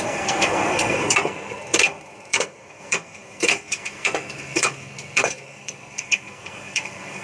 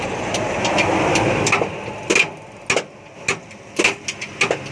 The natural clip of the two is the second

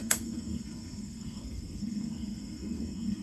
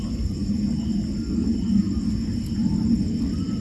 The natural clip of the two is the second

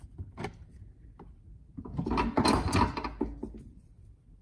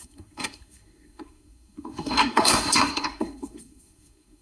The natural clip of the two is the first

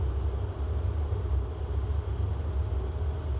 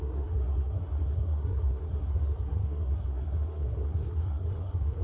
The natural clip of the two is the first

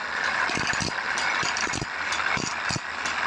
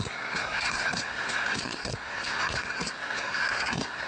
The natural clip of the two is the first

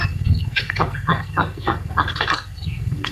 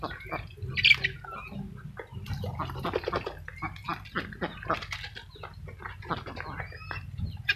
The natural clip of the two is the second